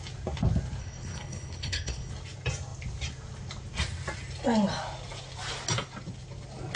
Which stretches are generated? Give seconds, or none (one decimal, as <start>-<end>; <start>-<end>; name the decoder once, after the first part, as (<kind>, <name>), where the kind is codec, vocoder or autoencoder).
0.8-2.1 (codec, HILCodec)